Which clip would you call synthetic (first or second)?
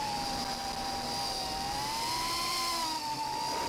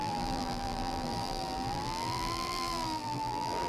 second